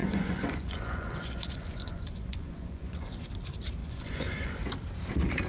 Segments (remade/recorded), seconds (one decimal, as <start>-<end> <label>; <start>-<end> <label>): 0.0-3.3 remade; 3.3-3.8 recorded; 3.8-4.5 remade; 4.5-5.5 recorded